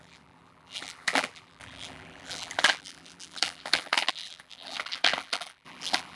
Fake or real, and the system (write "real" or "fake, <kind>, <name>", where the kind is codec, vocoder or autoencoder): fake, vocoder, BigVGAN v2